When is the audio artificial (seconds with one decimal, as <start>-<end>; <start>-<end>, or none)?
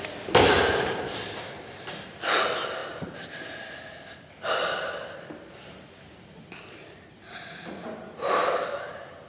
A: none